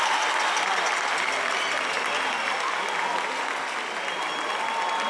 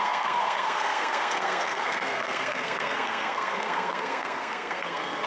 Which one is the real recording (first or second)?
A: first